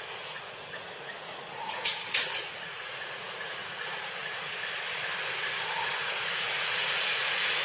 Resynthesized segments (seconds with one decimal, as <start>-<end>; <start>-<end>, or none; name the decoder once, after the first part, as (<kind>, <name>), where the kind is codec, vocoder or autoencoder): 0.0-4.2 (vocoder, Vocos); 5.9-7.6